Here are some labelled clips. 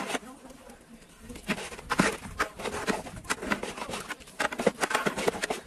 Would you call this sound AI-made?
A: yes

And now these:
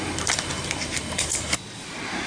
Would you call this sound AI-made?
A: yes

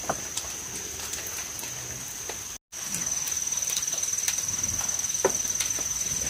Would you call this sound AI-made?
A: no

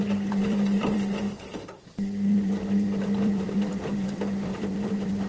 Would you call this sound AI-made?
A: yes